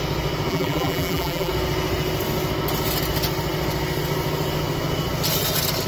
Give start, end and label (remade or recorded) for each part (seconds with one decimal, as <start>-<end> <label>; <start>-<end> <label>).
0.0-0.5 recorded; 0.5-1.5 remade; 1.5-5.9 recorded